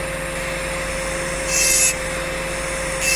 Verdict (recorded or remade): recorded